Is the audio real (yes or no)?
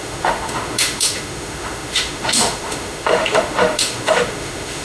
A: no